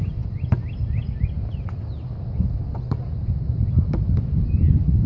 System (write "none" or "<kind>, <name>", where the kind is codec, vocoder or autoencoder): none